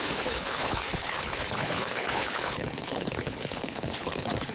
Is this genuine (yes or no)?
no